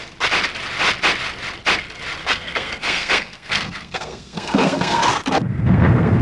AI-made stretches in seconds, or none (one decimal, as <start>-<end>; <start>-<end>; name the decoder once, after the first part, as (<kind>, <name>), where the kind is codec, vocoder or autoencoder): 2.2-6.2 (codec, SNAC)